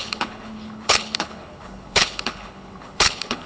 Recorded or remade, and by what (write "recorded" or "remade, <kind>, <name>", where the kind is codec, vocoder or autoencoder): remade, codec, HILCodec